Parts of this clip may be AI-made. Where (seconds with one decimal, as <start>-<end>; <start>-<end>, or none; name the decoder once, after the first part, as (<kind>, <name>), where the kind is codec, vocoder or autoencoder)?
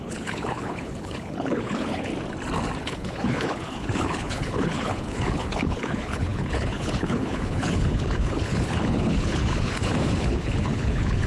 0.0-2.1 (codec, HILCodec); 2.8-11.3